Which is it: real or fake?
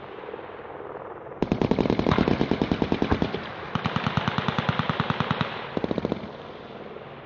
real